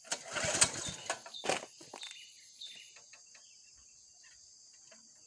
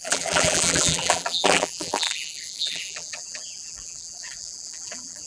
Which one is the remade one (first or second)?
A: second